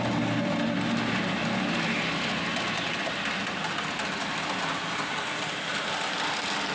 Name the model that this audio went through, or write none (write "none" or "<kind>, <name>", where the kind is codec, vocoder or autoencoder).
none